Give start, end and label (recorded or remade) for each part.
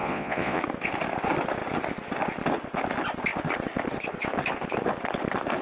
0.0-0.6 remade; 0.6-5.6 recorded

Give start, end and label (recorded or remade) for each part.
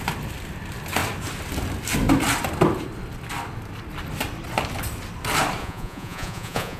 0.0-5.6 recorded; 5.6-6.8 remade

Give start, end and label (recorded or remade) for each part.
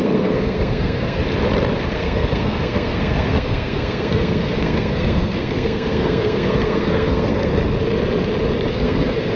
0.0-1.2 remade; 1.2-1.9 recorded; 1.9-7.5 remade; 7.5-8.7 recorded; 8.7-9.4 remade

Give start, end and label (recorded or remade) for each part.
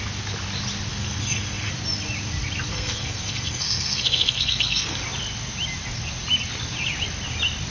0.0-0.9 recorded; 0.9-1.7 remade; 1.7-2.7 recorded; 2.7-5.0 remade; 5.0-7.7 recorded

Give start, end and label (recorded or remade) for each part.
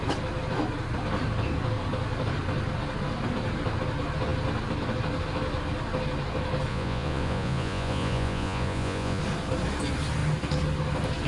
0.0-6.7 recorded; 6.7-9.2 remade; 9.2-11.3 recorded